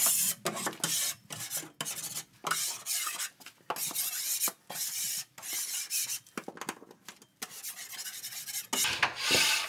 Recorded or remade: recorded